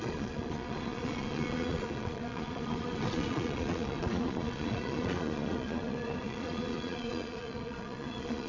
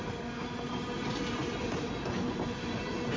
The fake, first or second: first